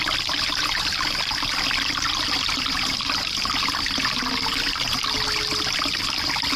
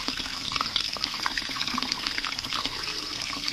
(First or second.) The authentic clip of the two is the first